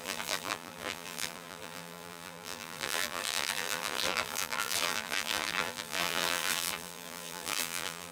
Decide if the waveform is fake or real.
fake